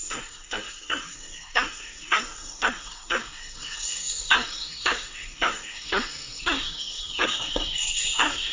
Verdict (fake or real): fake